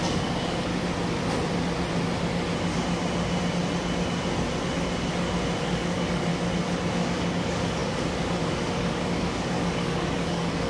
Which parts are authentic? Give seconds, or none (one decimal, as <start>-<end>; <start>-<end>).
0.7-5.6; 6.3-6.9